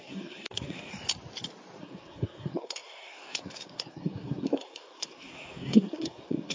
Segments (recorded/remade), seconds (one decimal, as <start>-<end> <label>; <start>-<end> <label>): 0.0-0.9 remade; 0.9-1.8 recorded; 1.8-6.5 remade